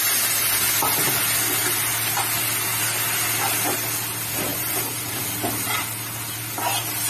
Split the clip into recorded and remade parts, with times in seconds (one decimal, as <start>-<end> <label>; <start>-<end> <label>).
0.0-4.5 recorded; 4.5-5.2 remade; 5.2-7.1 recorded